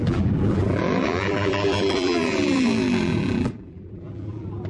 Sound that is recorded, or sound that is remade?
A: remade